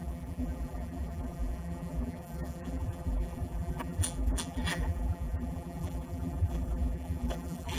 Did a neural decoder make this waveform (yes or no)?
yes